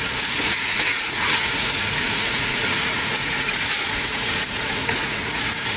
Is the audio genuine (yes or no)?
no